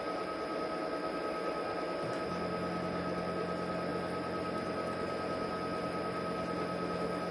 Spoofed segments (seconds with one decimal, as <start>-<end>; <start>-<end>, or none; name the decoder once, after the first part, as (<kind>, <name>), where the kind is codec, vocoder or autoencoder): none